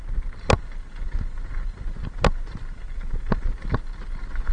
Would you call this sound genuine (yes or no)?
yes